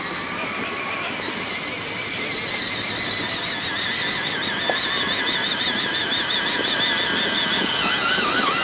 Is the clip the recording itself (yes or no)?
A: yes